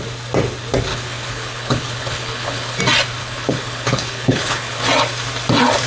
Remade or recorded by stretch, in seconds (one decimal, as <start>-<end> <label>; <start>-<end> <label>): 0.0-0.9 recorded; 0.9-2.8 remade; 2.8-3.2 recorded; 3.2-4.8 remade; 4.8-5.9 recorded